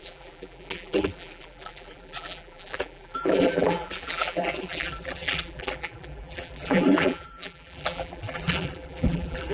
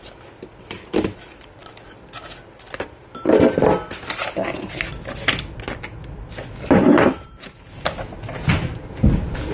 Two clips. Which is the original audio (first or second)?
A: second